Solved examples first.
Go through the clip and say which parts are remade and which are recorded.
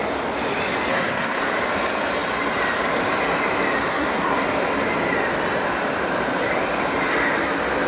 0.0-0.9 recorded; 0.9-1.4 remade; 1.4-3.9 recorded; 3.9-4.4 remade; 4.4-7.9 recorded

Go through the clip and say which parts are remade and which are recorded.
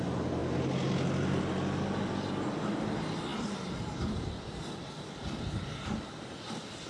0.0-6.9 recorded